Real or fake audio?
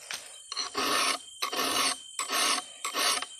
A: real